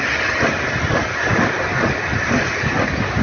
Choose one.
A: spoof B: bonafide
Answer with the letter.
B